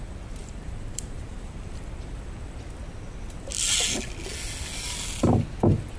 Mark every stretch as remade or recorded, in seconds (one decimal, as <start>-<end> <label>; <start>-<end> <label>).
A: 0.0-0.4 recorded; 0.4-1.6 remade; 1.6-6.0 recorded